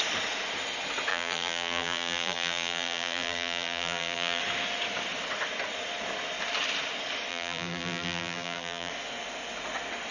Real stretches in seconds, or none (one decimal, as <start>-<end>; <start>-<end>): 0.0-1.1; 4.4-7.3; 8.9-10.1